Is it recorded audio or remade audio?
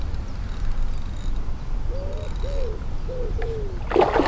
recorded